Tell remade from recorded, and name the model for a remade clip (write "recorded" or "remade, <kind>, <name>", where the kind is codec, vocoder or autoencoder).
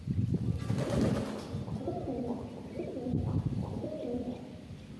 recorded